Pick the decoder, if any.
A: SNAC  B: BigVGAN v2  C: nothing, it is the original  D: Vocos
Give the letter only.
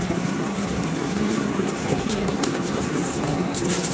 A